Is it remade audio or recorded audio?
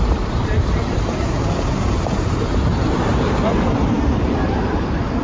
remade